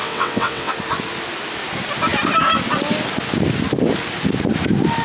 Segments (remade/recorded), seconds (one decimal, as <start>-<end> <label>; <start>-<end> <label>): 0.0-0.7 remade; 0.7-5.0 recorded